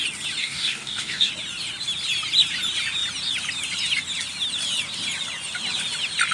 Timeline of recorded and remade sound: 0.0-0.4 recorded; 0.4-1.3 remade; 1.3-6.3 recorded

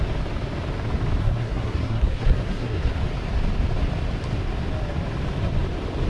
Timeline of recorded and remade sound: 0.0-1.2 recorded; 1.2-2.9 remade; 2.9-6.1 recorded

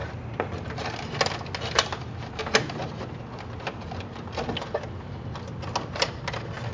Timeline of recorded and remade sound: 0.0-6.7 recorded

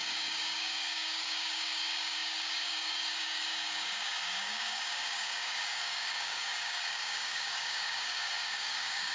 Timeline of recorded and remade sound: 0.0-9.1 remade